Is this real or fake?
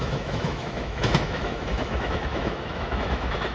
fake